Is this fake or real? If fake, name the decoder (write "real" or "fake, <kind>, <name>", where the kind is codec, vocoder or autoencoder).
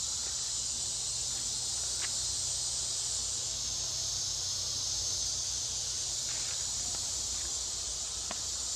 real